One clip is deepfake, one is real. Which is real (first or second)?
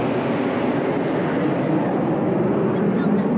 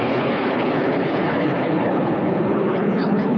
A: first